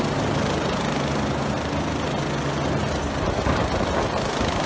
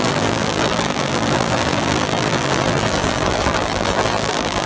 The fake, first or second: second